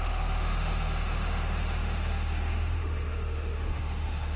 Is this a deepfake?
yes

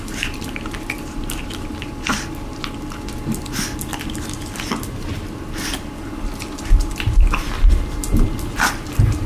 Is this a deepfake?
no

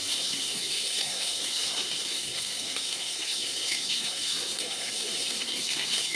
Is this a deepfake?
yes